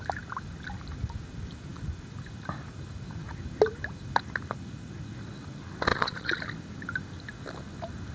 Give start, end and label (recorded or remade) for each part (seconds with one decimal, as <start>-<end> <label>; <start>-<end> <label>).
0.0-5.9 recorded; 5.9-6.4 remade; 6.4-8.1 recorded